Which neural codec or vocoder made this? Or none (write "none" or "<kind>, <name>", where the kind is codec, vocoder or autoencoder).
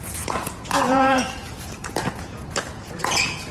vocoder, Vocos